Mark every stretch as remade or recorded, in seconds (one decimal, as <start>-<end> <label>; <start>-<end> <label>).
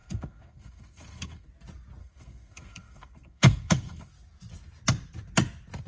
0.0-1.5 remade; 1.5-2.0 recorded; 2.0-4.1 remade; 4.1-5.9 recorded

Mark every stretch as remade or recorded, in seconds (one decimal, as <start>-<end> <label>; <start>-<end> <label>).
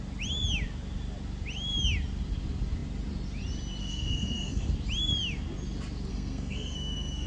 0.0-3.8 recorded; 3.8-4.7 remade; 4.7-6.1 recorded; 6.1-7.3 remade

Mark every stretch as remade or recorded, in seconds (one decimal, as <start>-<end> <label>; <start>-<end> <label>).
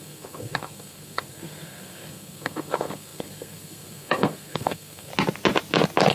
0.0-5.1 remade; 5.1-6.1 recorded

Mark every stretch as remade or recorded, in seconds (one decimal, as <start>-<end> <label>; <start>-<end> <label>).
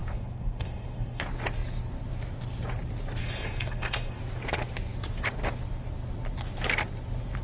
0.0-1.2 remade; 1.2-3.2 recorded; 3.2-4.2 remade; 4.2-7.4 recorded